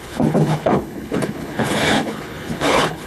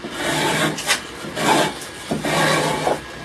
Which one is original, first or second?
second